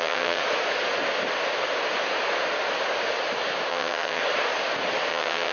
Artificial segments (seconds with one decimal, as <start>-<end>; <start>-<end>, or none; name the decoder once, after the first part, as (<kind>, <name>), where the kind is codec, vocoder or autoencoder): 0.0-0.4 (vocoder, HiFi-GAN); 3.7-4.2; 5.1-5.5